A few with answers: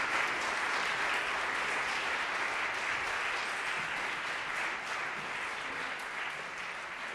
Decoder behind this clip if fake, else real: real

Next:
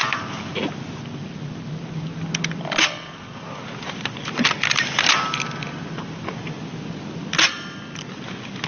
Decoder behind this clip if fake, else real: real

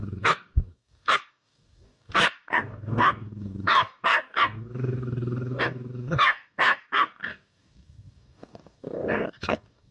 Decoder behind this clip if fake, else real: fake, codec, DAC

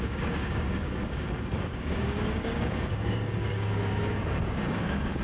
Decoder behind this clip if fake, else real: fake, codec, DAC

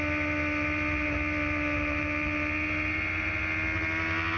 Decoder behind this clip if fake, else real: real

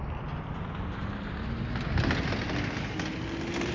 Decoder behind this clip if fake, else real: real